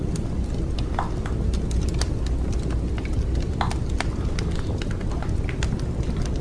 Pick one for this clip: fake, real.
real